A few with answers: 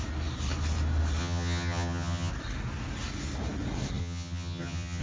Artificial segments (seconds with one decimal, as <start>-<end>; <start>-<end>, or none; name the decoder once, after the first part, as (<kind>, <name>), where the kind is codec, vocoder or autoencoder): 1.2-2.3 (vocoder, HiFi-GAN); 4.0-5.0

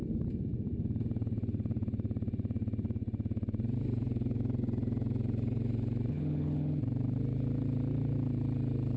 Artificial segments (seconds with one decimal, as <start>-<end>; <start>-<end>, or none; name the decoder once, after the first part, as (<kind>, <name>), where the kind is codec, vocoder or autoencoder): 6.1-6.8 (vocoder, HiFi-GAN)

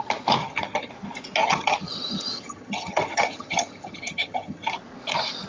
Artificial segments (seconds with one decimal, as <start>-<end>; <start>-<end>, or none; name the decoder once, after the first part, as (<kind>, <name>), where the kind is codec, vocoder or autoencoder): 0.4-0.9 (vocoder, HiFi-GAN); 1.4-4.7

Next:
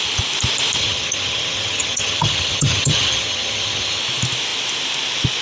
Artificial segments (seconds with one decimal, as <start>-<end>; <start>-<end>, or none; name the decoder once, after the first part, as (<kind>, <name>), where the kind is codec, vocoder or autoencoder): 0.8-4.0 (vocoder, HiFi-GAN)